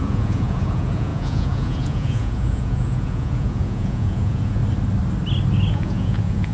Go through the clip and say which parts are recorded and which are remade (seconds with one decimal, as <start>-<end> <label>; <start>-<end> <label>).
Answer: 0.0-4.6 remade; 4.6-5.7 recorded; 5.7-6.5 remade